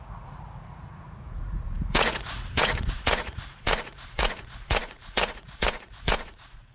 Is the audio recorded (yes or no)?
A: no